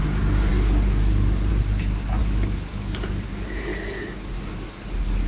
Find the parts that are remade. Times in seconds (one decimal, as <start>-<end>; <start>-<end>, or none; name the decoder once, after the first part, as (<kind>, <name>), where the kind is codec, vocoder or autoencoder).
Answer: 2.2-3.3 (codec, DAC)